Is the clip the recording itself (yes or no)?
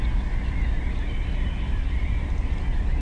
yes